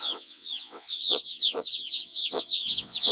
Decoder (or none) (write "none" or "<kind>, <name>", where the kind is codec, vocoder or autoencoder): vocoder, WaveNeXt